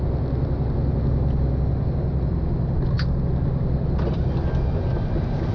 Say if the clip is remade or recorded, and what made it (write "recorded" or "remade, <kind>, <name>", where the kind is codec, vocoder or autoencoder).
recorded